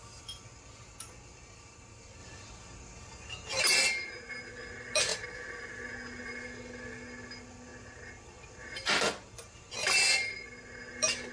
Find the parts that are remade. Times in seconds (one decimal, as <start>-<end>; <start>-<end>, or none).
none